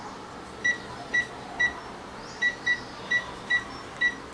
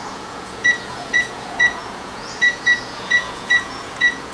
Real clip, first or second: first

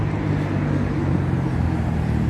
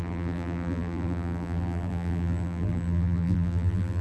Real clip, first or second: first